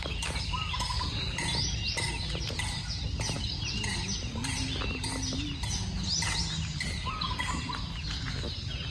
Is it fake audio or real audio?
real